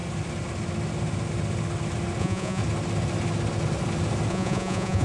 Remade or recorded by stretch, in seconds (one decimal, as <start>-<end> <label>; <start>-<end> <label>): 0.0-2.2 recorded; 2.2-2.6 remade; 2.6-4.3 recorded; 4.3-5.0 remade